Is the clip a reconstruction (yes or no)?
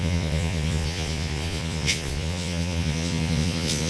yes